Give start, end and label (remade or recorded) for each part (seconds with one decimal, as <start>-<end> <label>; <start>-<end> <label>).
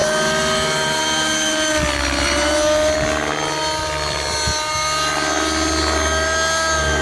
0.0-7.0 recorded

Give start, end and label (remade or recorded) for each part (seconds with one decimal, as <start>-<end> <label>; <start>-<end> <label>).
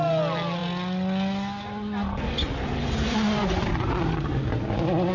0.0-5.1 recorded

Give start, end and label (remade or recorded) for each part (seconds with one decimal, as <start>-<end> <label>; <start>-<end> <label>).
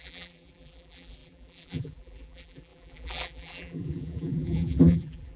0.0-5.4 remade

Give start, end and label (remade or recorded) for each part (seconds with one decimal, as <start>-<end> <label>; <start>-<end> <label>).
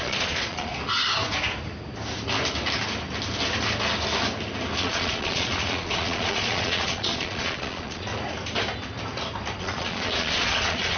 0.0-0.7 remade; 0.7-4.8 recorded; 4.8-8.1 remade; 8.1-9.6 recorded; 9.6-11.0 remade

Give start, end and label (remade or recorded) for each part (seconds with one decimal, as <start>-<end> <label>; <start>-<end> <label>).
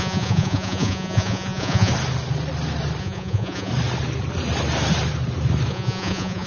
0.0-1.9 remade; 1.9-3.0 recorded; 3.0-3.7 remade; 3.7-5.7 recorded; 5.7-6.5 remade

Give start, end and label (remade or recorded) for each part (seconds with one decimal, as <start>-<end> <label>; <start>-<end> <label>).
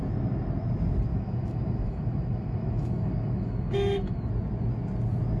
0.0-1.1 recorded; 1.1-4.3 remade; 4.3-5.4 recorded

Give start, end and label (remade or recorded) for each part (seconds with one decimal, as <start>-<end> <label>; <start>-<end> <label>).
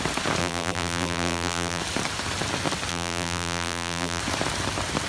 0.0-0.4 recorded; 0.4-1.8 remade; 1.8-2.9 recorded; 2.9-4.2 remade; 4.2-5.1 recorded